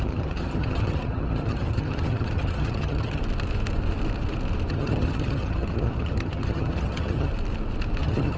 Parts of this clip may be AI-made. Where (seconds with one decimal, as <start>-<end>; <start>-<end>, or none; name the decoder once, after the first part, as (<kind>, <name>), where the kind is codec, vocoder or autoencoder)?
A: 0.0-3.2 (vocoder, HiFi-GAN); 4.7-7.3; 8.0-8.4